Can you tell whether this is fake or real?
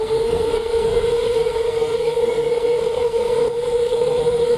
fake